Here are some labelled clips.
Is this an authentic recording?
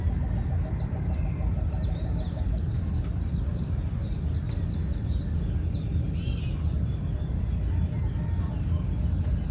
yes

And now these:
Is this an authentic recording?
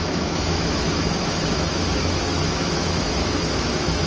no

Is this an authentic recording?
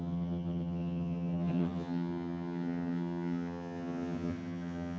no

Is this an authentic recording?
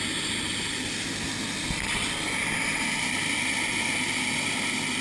yes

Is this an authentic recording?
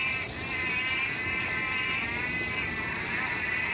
yes